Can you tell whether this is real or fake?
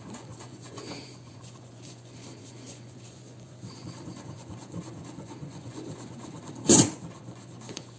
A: fake